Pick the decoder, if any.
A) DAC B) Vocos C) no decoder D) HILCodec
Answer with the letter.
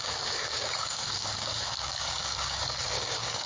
A